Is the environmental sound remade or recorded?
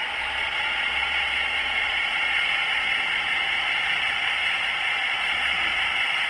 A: remade